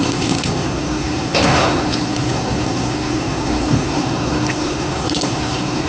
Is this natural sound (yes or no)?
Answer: no